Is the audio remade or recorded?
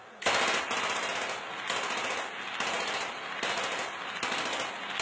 recorded